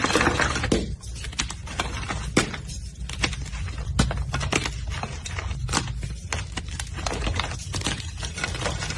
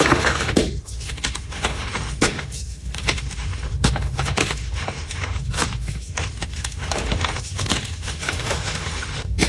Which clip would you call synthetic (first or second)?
second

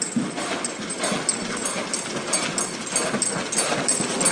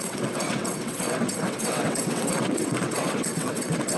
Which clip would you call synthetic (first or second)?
second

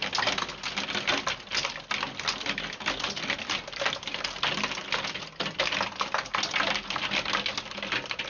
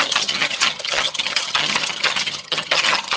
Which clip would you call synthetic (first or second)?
second